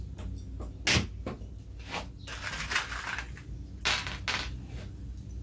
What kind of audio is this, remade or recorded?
recorded